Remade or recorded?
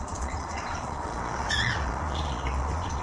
remade